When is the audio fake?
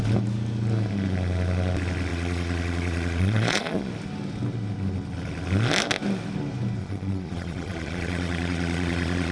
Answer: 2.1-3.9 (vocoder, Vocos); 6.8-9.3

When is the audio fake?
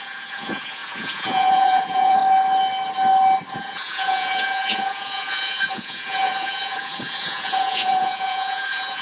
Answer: 0.0-2.2 (vocoder, Vocos); 3.5-9.0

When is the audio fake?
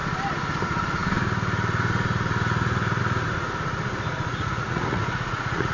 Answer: 4.3-5.7 (vocoder, Vocos)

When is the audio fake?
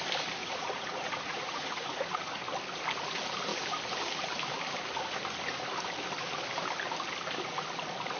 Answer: 0.4-2.4 (vocoder, Vocos)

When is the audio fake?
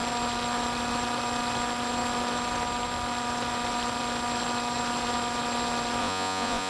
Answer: 6.0-6.7 (vocoder, Vocos)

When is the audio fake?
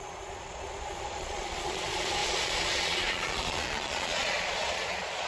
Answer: 0.0-5.3 (vocoder, Vocos)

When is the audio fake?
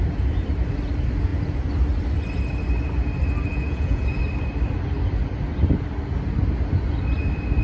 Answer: 3.5-4.2 (vocoder, Vocos)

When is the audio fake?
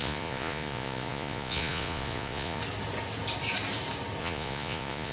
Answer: 0.0-2.6 (vocoder, Vocos); 4.2-5.1